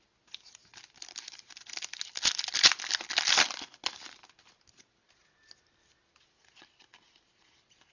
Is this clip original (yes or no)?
yes